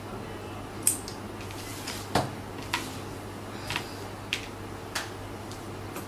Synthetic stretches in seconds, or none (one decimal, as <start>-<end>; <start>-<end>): none